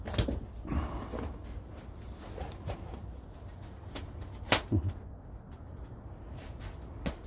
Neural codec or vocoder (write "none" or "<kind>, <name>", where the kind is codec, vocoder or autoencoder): none